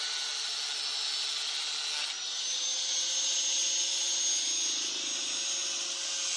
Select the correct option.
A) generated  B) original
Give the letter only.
B